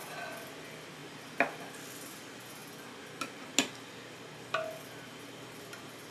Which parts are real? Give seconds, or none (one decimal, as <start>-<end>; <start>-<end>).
0.0-6.1